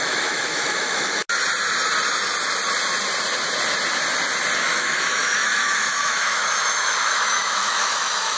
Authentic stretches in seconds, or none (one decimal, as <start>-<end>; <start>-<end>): 1.2-4.6